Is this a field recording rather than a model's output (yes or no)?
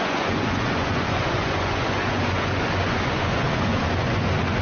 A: no